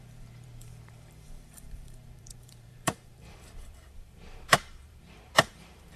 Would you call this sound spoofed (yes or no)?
yes